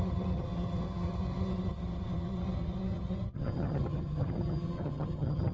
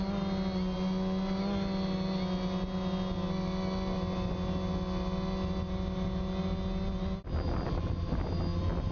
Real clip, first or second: second